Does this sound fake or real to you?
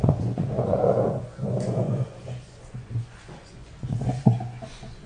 fake